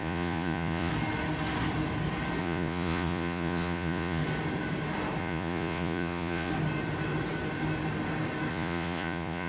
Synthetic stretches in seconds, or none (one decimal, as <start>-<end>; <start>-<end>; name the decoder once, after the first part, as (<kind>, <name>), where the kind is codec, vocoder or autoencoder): 0.0-0.9 (vocoder, Vocos); 2.4-4.2; 5.2-6.5; 8.5-9.5